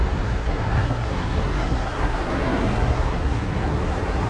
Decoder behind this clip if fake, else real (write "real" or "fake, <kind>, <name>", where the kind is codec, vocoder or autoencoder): fake, codec, SNAC